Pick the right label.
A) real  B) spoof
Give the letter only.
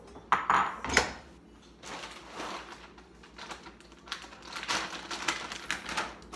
A